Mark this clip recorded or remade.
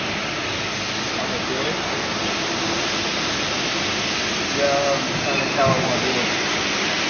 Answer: recorded